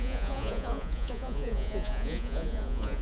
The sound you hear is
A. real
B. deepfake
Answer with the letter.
B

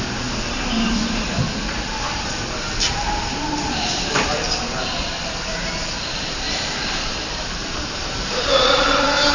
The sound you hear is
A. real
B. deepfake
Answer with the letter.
B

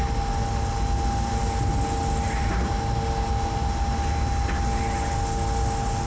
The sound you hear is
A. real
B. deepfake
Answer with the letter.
A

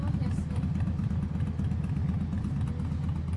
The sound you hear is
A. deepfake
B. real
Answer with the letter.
B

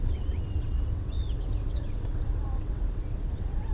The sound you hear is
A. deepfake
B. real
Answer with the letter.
A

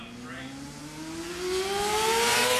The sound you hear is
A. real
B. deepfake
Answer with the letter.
A